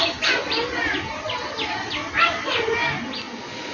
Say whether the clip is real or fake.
real